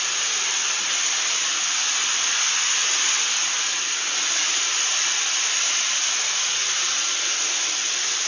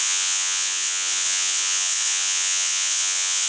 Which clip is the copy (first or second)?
second